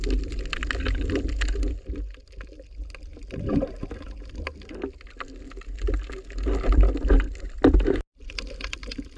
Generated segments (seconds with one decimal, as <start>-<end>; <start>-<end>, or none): none